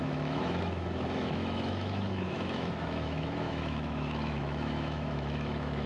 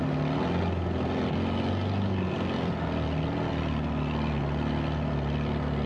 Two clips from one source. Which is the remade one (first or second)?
first